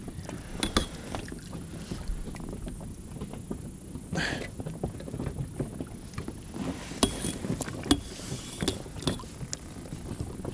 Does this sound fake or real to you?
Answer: real